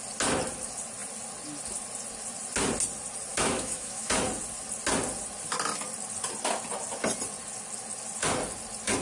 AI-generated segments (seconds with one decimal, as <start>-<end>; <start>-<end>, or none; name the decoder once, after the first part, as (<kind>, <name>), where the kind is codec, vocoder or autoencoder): 3.3-4.1 (autoencoder, DAC-VAE)